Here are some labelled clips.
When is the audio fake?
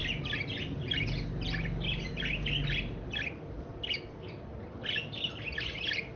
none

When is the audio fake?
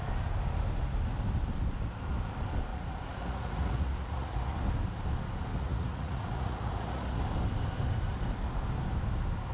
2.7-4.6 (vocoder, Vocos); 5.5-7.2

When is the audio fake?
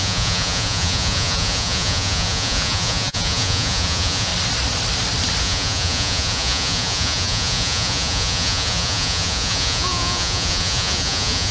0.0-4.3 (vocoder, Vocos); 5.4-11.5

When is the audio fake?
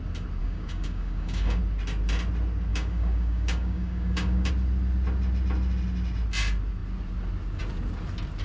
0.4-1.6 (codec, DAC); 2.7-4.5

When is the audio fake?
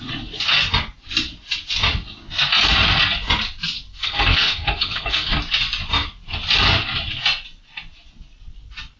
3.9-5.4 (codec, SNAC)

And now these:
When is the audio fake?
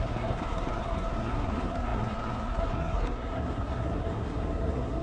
0.0-5.0 (codec, SNAC)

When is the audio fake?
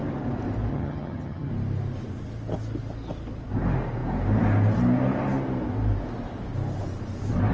0.7-1.5 (vocoder, HiFi-GAN)